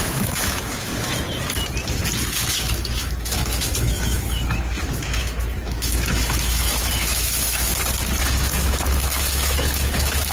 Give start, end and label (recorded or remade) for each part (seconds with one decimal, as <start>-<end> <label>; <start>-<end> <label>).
0.0-0.9 remade; 0.9-2.3 recorded; 2.3-7.7 remade; 7.7-8.3 recorded; 8.3-10.3 remade